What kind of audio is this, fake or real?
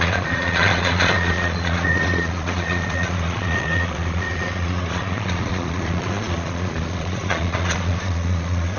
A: fake